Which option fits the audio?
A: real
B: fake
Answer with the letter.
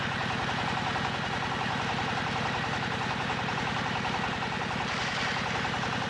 A